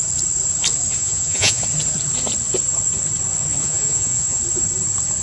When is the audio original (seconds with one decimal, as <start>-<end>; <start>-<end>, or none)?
0.0-1.0; 1.6-3.6; 4.4-5.2